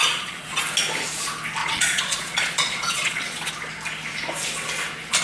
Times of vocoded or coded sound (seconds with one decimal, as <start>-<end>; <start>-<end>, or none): 0.0-0.6; 1.6-3.5